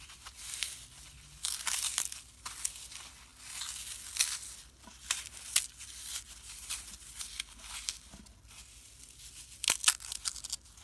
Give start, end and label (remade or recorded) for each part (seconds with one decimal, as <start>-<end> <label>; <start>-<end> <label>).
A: 0.0-10.8 recorded